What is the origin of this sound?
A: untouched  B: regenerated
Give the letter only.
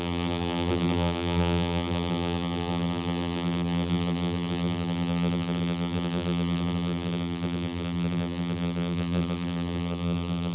B